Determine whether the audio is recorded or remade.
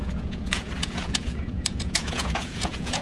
remade